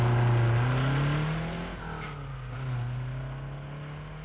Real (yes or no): yes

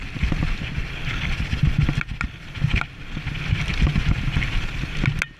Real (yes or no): yes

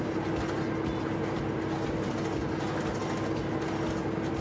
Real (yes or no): yes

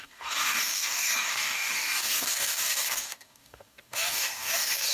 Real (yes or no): no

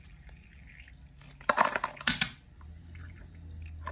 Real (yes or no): yes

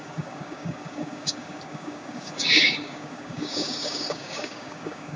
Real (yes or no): no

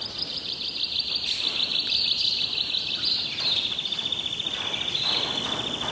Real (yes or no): yes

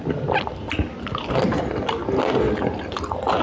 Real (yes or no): yes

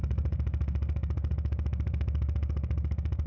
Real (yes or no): no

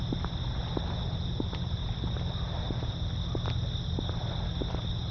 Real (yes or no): yes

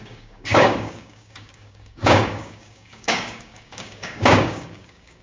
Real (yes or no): no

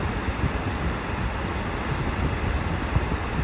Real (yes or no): yes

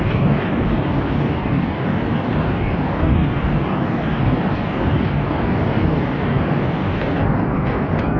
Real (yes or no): no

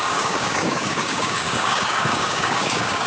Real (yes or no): no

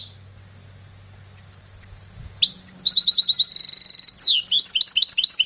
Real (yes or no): yes